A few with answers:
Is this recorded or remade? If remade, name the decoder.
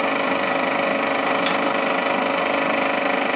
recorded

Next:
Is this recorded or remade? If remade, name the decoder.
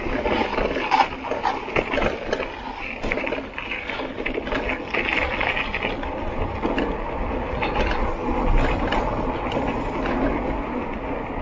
recorded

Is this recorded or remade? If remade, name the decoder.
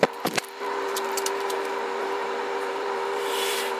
remade, vocoder, BigVGAN v2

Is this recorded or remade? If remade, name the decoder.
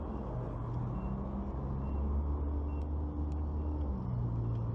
recorded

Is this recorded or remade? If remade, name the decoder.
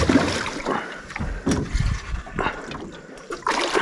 remade, vocoder, BigVGAN v2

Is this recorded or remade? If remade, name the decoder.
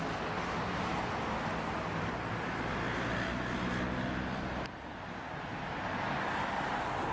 recorded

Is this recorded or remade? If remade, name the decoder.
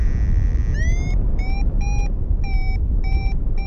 recorded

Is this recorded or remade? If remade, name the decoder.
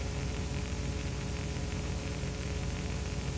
remade, vocoder, BigVGAN v2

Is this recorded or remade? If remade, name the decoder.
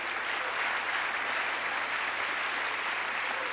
recorded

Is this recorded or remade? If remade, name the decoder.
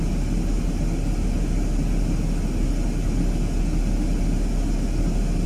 recorded